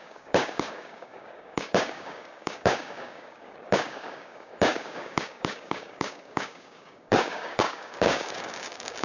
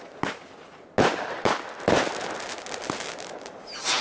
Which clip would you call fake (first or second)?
first